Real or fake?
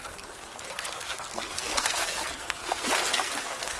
fake